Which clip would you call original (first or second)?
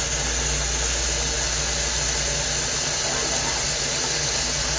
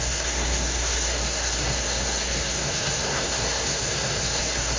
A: first